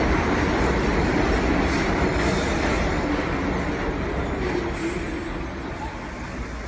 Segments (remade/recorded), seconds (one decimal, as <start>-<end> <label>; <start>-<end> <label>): 0.0-6.7 recorded